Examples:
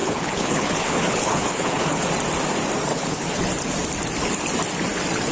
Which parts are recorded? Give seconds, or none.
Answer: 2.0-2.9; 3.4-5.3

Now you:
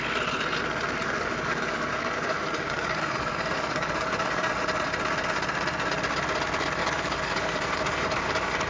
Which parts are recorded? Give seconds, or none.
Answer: 0.0-1.0; 4.5-6.8

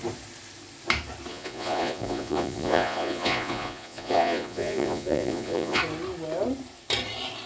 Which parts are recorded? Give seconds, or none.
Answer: 0.0-1.3; 5.8-7.5